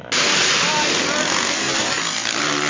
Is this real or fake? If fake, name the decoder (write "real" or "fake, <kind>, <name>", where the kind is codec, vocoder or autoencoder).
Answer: real